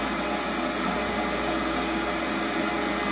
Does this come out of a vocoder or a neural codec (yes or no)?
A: no